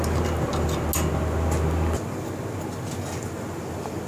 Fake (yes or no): no